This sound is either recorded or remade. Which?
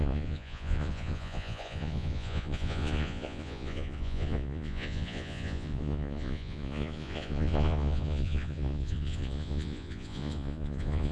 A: remade